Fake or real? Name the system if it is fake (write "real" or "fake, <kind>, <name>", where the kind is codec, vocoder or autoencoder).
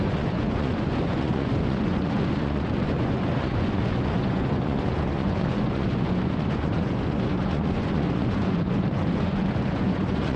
fake, vocoder, Vocos